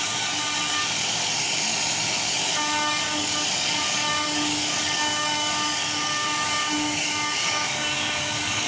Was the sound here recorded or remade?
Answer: remade